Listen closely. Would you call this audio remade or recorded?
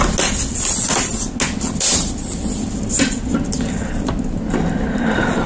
recorded